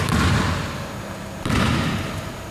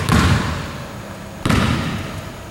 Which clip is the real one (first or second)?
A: first